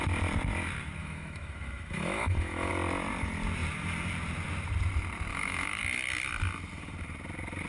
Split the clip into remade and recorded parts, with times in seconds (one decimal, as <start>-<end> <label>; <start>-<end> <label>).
0.0-1.0 recorded; 1.0-2.7 remade; 2.7-5.3 recorded; 5.3-5.8 remade; 5.8-7.7 recorded